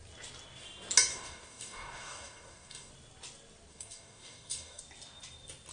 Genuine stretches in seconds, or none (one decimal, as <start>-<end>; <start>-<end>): 0.0-1.1; 2.9-3.7; 4.8-5.7